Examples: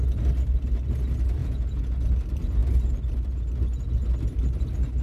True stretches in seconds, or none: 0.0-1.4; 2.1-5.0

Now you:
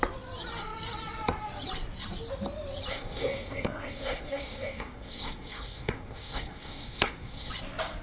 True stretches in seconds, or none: 0.0-2.9; 7.5-8.0

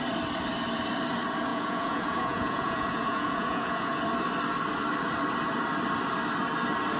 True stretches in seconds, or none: 0.0-1.5; 4.0-7.0

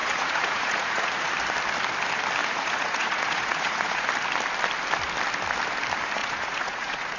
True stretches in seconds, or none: 1.3-2.4; 4.1-6.2

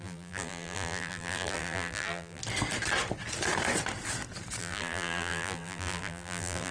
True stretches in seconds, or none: 2.4-4.6

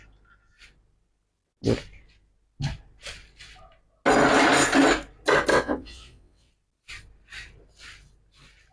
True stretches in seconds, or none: 0.0-5.5; 6.5-8.7